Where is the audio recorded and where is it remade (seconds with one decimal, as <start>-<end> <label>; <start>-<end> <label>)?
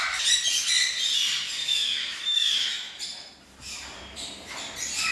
0.0-1.6 recorded; 1.6-3.0 remade; 3.0-5.1 recorded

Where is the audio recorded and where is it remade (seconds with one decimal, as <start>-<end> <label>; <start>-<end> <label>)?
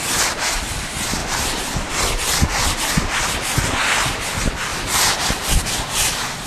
0.0-1.2 recorded; 1.2-1.9 remade; 1.9-2.5 recorded; 2.5-3.3 remade; 3.3-4.7 recorded; 4.7-5.8 remade; 5.8-6.5 recorded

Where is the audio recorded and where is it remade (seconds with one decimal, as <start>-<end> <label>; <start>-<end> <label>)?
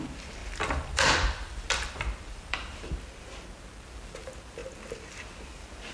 0.0-0.4 recorded; 0.4-2.9 remade; 2.9-5.9 recorded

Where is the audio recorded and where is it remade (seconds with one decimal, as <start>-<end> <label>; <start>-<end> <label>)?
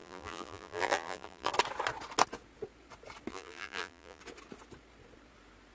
0.0-1.5 remade; 1.5-3.3 recorded; 3.3-4.2 remade; 4.2-5.7 recorded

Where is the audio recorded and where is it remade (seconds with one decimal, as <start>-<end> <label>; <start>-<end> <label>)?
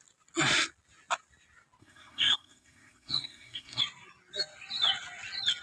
0.0-1.8 recorded; 1.8-3.8 remade; 3.8-5.6 recorded